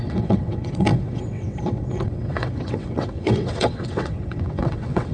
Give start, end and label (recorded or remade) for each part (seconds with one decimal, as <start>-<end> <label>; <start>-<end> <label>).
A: 0.0-5.1 remade